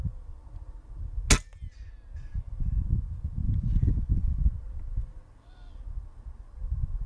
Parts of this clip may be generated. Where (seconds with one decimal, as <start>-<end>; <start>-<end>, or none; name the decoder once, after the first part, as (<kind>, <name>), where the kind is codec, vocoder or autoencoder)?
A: none